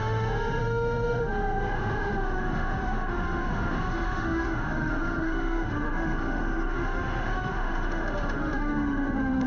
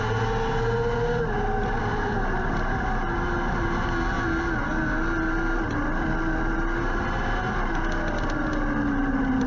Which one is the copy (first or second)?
first